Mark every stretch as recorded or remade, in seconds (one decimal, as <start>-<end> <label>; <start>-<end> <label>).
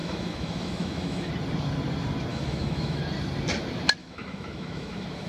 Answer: 0.0-1.3 remade; 1.3-2.3 recorded; 2.3-3.0 remade; 3.0-4.0 recorded; 4.0-5.3 remade